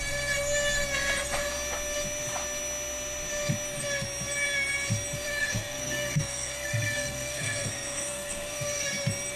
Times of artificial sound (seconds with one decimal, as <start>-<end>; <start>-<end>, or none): 5.4-8.9